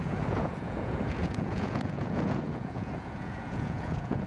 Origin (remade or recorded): remade